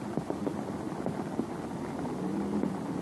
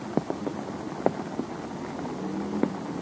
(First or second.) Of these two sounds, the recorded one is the second